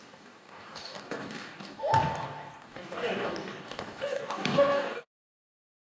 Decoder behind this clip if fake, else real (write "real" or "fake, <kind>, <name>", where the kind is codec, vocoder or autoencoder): fake, codec, DAC